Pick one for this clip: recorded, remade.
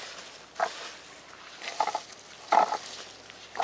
recorded